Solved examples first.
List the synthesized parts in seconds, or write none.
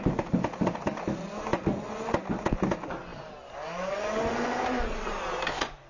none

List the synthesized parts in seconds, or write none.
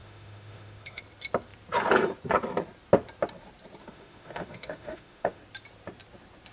0.0-1.0 (autoencoder, DAC-VAE); 3.8-5.4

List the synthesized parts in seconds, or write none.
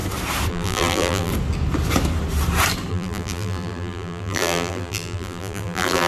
0.5-1.3 (vocoder, BigVGAN v2); 2.9-6.1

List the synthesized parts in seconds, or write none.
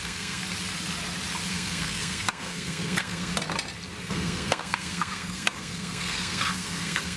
0.0-0.4 (codec, SNAC); 1.5-3.3; 4.0-7.2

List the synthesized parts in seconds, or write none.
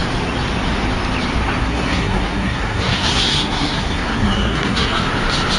1.6-5.0 (codec, SNAC)